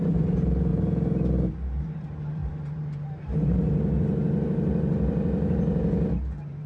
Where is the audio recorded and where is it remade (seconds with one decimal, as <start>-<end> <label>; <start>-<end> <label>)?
0.0-0.7 remade; 0.7-1.8 recorded; 1.8-6.7 remade